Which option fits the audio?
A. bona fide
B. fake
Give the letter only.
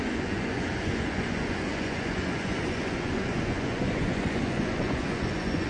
B